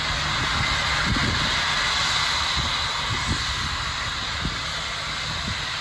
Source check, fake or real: real